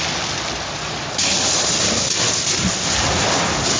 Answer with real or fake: real